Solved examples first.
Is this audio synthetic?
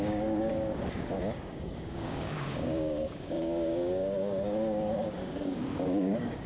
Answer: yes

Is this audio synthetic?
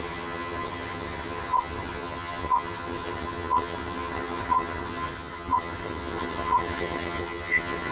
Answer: yes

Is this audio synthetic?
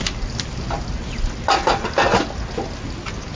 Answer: no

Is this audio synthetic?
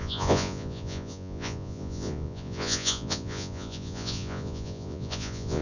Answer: yes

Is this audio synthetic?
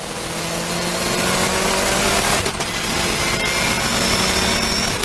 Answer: no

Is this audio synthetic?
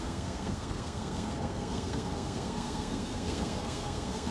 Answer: yes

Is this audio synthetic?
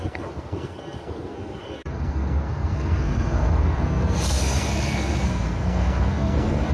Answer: yes